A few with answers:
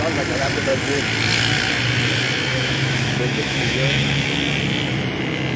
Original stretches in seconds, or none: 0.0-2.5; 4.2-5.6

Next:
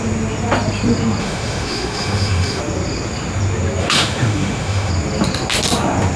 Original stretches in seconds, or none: 0.0-1.2; 2.6-3.8; 4.9-6.2